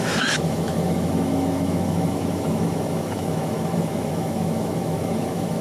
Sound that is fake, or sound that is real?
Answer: fake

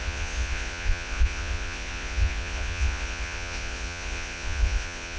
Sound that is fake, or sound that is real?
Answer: fake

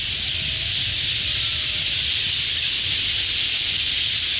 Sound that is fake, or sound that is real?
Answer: real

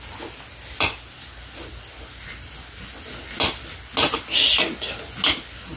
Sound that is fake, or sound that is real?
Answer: real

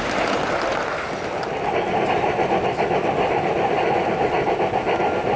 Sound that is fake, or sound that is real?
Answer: real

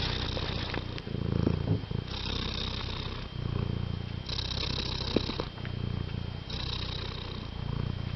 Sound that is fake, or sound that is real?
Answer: real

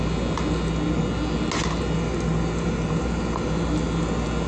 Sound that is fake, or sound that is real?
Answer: real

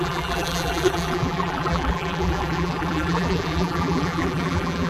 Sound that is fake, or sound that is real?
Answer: fake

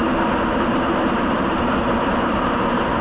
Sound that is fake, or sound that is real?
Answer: fake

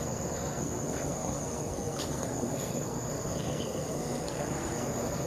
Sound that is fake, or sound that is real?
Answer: fake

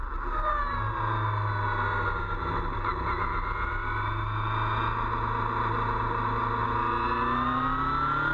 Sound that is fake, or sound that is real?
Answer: real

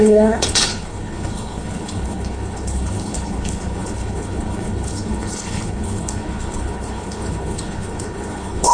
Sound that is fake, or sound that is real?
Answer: fake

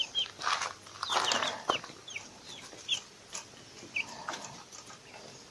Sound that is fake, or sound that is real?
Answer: real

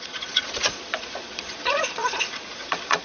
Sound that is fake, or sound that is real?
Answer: fake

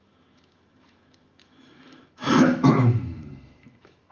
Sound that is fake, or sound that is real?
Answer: fake